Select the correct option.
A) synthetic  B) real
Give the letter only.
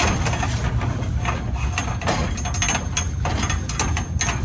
B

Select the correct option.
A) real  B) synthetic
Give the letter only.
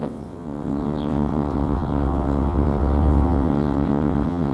B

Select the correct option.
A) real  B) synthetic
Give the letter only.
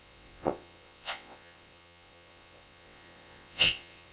B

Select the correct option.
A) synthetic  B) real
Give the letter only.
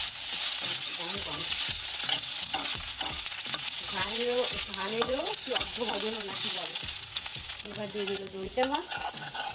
A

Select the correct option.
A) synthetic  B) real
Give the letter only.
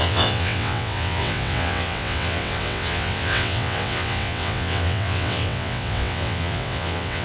A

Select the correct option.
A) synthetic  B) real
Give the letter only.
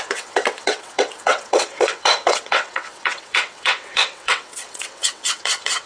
A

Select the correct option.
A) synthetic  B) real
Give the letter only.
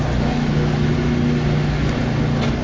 B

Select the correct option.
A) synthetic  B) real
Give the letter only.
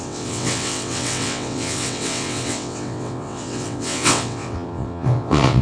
A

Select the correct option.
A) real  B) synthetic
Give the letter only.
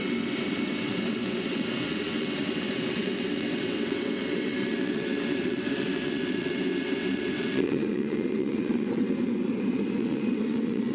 B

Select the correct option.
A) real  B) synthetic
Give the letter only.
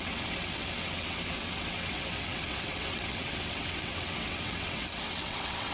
B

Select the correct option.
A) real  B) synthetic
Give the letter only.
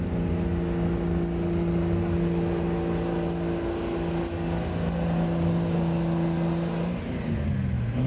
A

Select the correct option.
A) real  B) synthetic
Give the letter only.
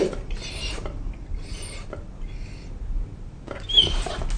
A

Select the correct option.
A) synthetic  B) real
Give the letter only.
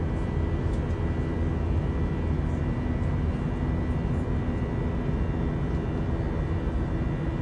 B